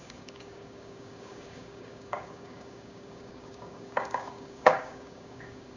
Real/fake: fake